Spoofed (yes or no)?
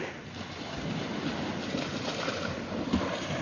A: no